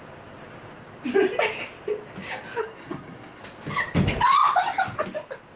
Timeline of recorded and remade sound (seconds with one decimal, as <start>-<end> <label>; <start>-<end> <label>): 0.0-2.6 recorded; 2.6-3.4 remade; 3.4-5.6 recorded